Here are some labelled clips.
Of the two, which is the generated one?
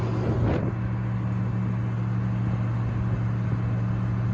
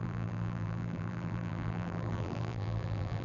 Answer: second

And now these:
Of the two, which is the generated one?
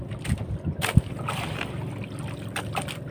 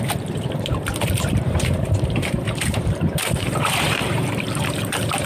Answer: second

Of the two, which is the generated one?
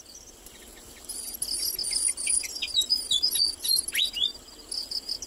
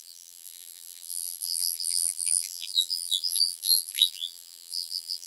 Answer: second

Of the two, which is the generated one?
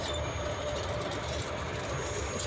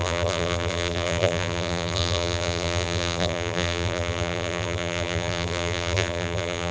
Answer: second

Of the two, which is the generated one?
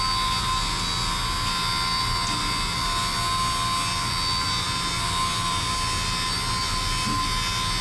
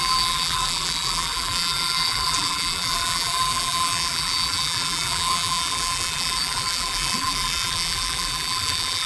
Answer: second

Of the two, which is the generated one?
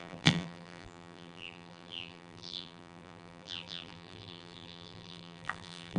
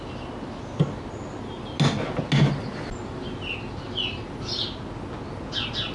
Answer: first